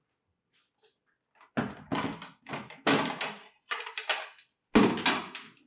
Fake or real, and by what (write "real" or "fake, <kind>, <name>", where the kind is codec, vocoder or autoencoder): real